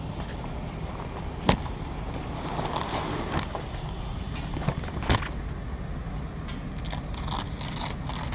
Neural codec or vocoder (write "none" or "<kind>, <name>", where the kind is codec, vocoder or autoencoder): none